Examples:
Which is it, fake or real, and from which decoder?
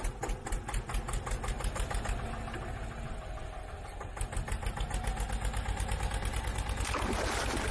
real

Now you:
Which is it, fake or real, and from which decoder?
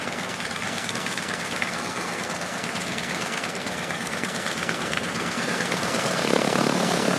fake, codec, SNAC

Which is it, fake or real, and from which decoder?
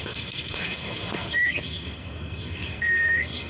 fake, codec, SNAC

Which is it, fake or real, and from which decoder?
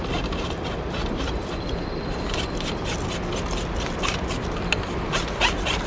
real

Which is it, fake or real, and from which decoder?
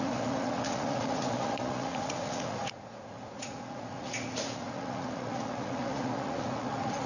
fake, vocoder, Vocos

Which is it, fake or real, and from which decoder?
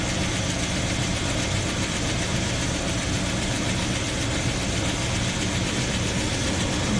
real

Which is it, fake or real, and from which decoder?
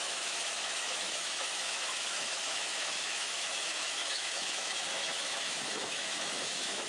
fake, autoencoder, DAC-VAE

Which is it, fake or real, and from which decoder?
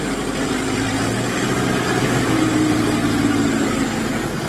real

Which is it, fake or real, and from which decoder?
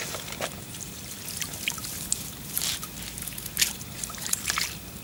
real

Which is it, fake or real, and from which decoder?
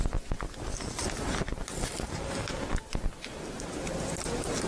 real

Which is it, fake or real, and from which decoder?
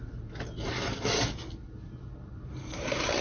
real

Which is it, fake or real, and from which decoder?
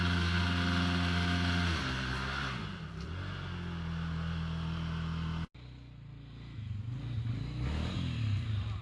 real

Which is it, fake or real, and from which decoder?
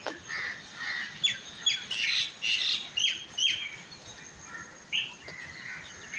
real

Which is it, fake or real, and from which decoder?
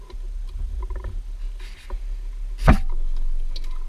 real